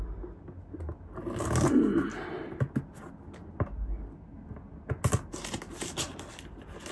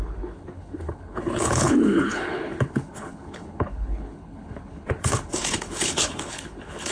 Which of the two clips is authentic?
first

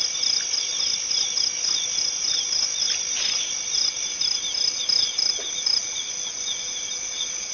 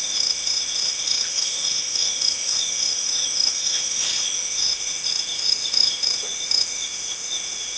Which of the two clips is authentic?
first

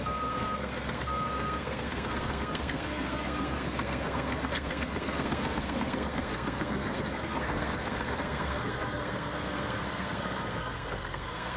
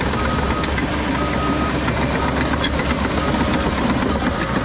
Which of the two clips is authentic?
second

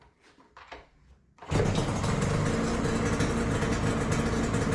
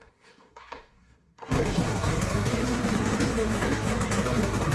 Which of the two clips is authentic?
first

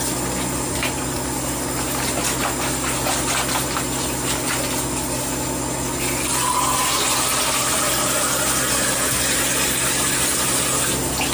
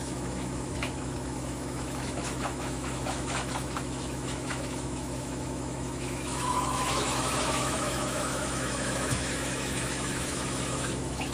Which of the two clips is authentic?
first